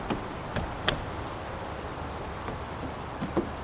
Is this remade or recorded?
recorded